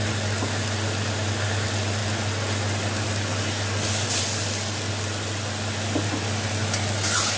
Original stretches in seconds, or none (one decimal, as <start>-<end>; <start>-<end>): 0.0-7.4